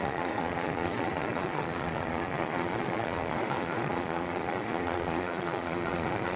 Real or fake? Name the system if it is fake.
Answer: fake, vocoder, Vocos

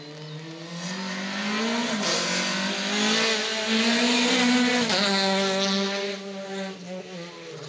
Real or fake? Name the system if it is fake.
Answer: real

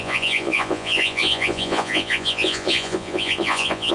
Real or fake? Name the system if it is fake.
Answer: fake, vocoder, Vocos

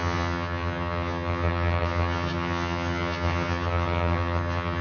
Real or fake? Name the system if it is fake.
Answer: fake, vocoder, HiFi-GAN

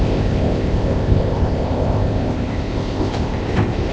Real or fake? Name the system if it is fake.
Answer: fake, codec, ZipCodec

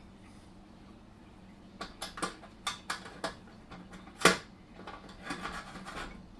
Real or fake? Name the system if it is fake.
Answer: real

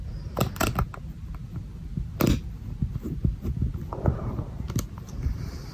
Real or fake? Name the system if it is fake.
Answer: real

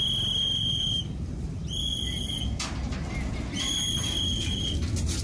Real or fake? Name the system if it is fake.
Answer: real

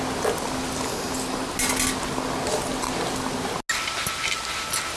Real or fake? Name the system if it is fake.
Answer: real